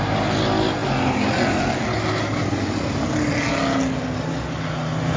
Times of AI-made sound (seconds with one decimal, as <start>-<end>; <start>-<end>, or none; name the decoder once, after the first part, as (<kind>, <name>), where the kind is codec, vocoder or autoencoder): none